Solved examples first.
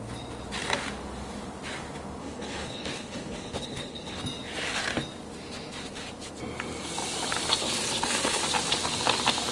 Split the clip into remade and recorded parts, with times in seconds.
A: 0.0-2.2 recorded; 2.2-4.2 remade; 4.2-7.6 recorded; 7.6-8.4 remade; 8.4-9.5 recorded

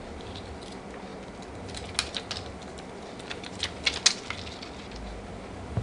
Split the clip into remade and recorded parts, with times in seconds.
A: 0.0-5.8 recorded

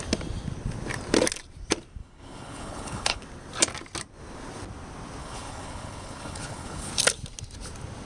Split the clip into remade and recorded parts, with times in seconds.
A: 0.0-2.0 recorded; 2.0-3.2 remade; 3.2-5.2 recorded; 5.2-6.9 remade; 6.9-8.1 recorded

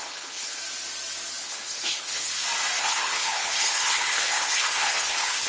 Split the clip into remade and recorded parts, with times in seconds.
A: 0.0-0.6 remade; 0.6-1.4 recorded; 1.4-2.3 remade; 2.3-2.8 recorded; 2.8-5.5 remade

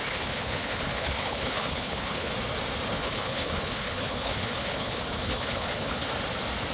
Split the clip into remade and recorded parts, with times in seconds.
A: 0.0-2.3 remade; 2.3-2.9 recorded; 2.9-6.1 remade; 6.1-6.7 recorded

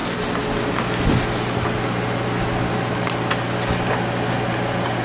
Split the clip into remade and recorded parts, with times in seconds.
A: 0.0-5.0 recorded

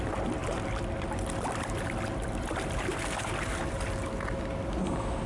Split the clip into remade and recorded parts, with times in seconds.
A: 0.0-5.3 recorded

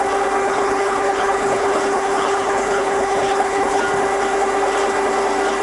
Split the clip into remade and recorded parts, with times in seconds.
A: 0.0-0.4 recorded; 0.4-3.8 remade; 3.8-5.6 recorded